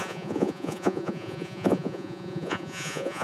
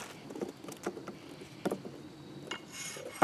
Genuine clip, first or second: second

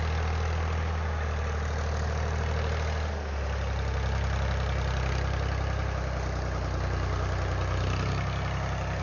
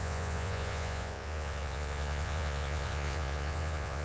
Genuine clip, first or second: first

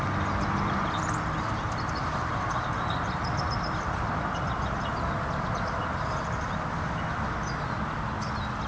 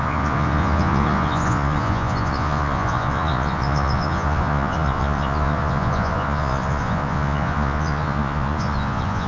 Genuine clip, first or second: first